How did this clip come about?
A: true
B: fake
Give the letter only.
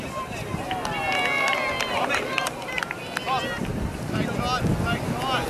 A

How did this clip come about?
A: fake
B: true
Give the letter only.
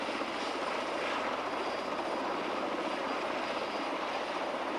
B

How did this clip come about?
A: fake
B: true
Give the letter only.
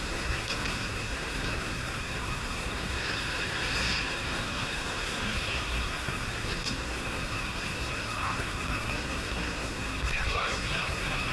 A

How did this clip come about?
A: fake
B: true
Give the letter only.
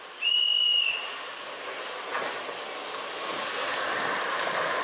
B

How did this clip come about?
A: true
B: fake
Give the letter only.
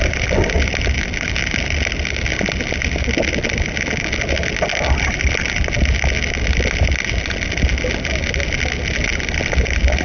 A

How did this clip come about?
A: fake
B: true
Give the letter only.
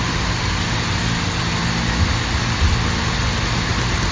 B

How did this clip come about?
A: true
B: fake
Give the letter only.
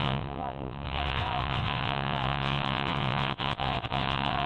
B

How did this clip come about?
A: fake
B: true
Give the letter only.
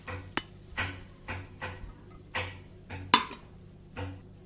B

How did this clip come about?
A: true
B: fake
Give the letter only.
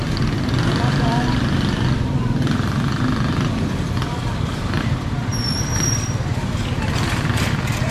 B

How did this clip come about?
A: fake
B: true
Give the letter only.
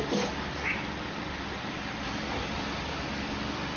B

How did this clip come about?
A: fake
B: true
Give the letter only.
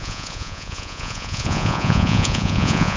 A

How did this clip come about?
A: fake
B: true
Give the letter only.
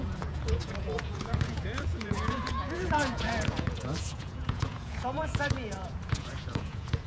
A